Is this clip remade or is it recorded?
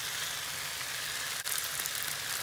recorded